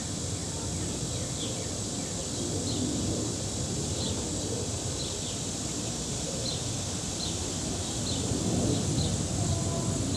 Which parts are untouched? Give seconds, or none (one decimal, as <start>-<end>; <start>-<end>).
0.4-2.6